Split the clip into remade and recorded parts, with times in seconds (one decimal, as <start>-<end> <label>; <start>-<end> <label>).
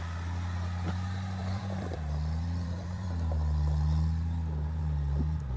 0.0-1.4 recorded; 1.4-4.8 remade; 4.8-5.6 recorded